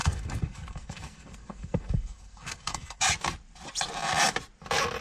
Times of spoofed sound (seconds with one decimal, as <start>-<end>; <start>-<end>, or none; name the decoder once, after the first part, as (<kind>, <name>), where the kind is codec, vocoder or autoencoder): 0.0-3.0 (codec, SNAC)